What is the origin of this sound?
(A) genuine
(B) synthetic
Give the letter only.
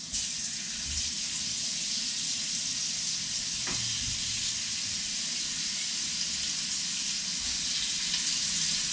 A